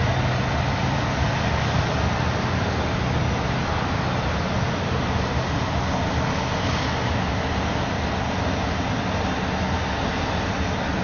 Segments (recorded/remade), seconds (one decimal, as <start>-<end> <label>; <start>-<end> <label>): 0.0-11.0 recorded